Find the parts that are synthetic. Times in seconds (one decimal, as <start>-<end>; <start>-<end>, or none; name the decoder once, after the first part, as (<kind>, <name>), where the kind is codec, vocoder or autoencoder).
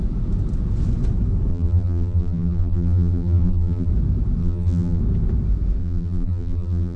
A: 1.5-3.9 (vocoder, BigVGAN v2); 4.4-5.0; 5.8-7.0